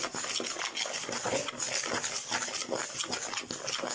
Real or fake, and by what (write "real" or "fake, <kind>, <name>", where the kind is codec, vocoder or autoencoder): real